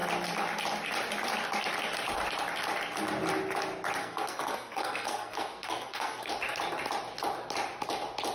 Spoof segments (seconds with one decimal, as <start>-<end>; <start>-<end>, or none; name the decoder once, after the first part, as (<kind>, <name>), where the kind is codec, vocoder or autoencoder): 4.0-6.3 (codec, SNAC)